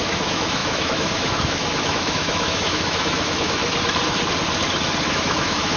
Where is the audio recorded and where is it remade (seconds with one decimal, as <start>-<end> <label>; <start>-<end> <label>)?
0.0-3.6 remade; 3.6-5.1 recorded; 5.1-5.8 remade